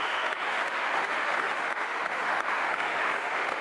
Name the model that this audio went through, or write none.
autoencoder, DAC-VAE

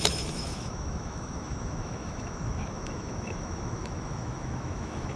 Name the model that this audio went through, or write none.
autoencoder, DAC-VAE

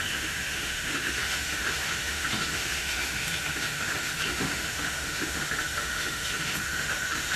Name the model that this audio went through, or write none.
autoencoder, DAC-VAE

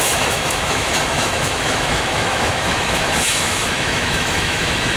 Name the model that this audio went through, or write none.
autoencoder, DAC-VAE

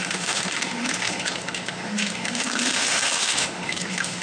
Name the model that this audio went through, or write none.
autoencoder, DAC-VAE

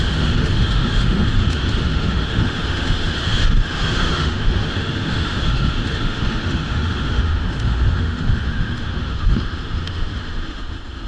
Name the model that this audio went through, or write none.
autoencoder, DAC-VAE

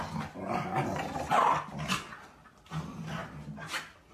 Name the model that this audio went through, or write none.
none